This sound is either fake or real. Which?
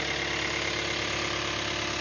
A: real